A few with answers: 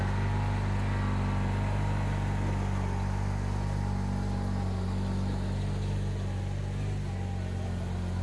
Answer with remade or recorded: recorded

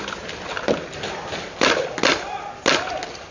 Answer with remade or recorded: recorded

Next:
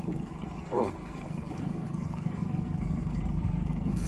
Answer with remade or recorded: remade